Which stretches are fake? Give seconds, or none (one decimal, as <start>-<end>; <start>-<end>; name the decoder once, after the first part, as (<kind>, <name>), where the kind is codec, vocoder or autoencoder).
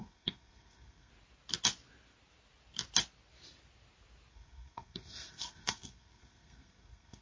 0.0-1.1 (codec, SNAC); 4.3-7.2